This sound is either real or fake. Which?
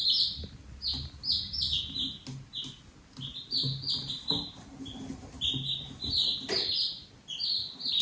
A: real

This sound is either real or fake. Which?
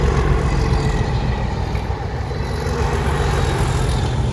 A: real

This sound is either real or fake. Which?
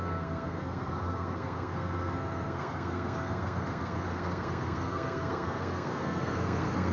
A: fake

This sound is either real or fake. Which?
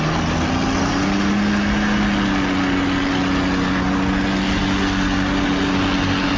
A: real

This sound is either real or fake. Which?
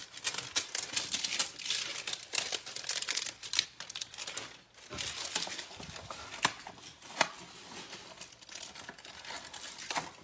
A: real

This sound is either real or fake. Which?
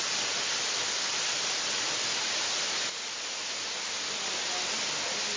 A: real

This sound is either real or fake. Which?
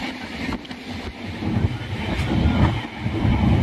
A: real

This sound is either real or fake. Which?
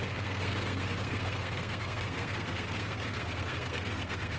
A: fake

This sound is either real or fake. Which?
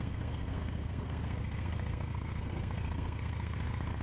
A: fake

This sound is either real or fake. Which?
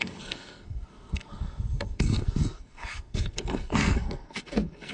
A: fake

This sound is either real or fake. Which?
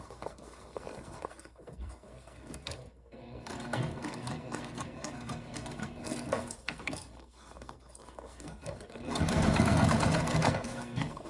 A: fake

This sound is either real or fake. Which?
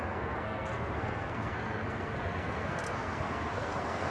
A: fake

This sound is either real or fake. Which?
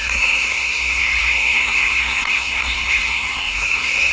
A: fake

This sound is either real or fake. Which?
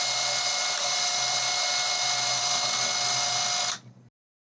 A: real